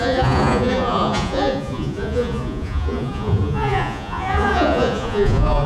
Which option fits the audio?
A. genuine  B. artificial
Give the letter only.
B